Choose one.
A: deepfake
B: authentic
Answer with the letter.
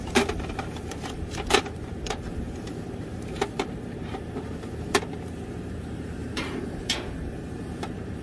A